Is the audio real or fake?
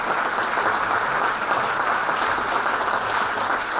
real